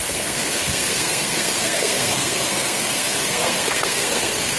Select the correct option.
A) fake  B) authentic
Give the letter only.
A